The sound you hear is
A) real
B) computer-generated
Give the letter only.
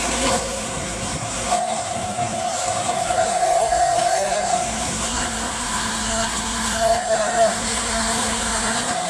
B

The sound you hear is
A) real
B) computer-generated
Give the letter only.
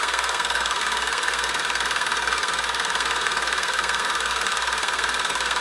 B